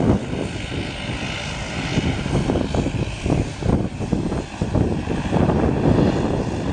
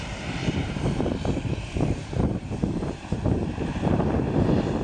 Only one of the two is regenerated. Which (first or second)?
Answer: second